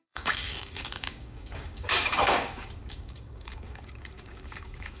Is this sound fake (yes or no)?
yes